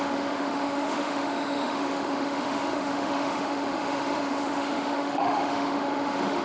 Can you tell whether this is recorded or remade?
remade